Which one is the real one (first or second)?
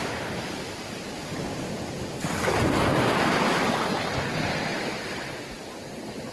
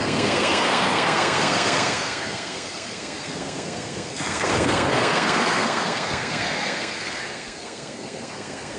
first